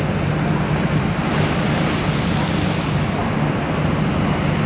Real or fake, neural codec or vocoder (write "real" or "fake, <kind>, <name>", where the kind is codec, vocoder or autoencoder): real